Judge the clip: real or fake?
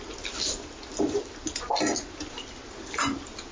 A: real